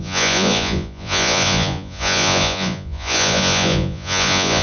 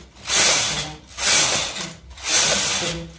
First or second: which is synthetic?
first